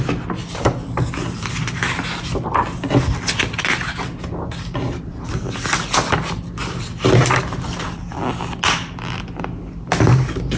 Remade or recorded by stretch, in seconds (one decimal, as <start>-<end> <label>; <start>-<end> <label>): 0.0-10.6 recorded